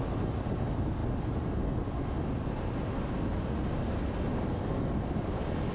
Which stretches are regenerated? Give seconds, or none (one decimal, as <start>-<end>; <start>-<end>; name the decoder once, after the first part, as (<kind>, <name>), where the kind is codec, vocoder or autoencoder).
none